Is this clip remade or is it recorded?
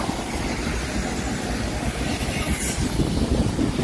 recorded